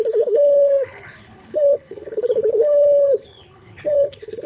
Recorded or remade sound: remade